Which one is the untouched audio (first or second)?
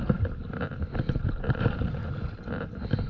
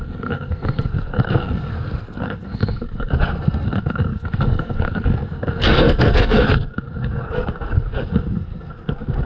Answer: first